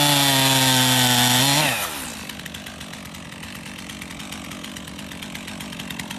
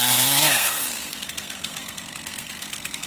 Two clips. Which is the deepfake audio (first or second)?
second